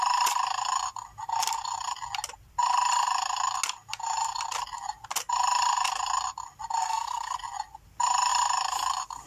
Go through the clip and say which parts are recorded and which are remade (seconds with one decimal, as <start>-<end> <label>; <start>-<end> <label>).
0.0-6.8 recorded; 6.8-7.4 remade; 7.4-9.3 recorded